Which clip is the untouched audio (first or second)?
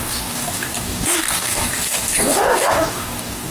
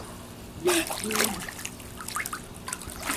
second